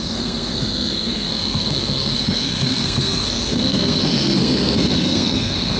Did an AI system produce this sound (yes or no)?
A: yes